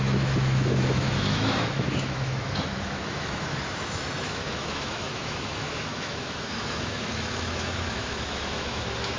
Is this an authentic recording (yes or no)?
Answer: no